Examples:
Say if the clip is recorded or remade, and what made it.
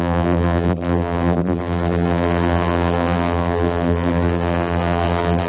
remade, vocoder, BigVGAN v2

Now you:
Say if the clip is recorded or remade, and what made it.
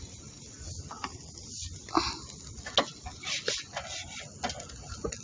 recorded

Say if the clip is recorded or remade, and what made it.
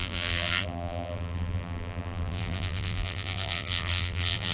remade, vocoder, BigVGAN v2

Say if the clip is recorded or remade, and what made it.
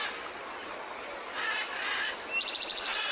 recorded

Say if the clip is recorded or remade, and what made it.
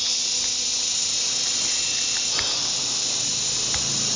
recorded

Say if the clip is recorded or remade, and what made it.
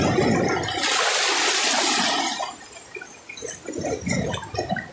recorded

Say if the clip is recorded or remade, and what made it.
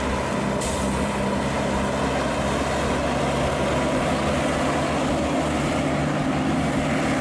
recorded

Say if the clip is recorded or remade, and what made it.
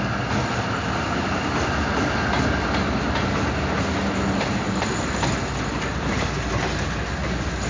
recorded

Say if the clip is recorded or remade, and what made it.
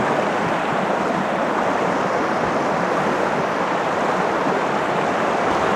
recorded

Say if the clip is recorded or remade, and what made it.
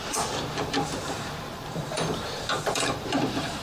remade, vocoder, BigVGAN v2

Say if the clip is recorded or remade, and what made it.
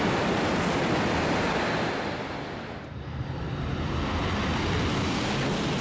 recorded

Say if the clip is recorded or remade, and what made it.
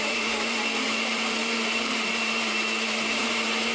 remade, vocoder, BigVGAN v2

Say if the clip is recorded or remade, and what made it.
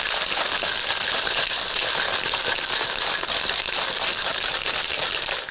recorded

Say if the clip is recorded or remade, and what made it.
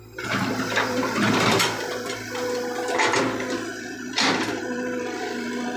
remade, vocoder, BigVGAN v2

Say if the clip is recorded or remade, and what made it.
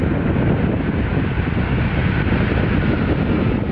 recorded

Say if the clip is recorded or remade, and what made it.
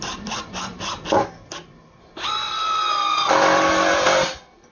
remade, vocoder, BigVGAN v2